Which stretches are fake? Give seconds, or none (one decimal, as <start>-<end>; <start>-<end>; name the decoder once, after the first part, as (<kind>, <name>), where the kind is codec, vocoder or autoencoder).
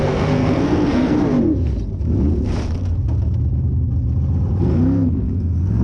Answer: 0.0-1.2 (codec, SNAC); 4.6-5.8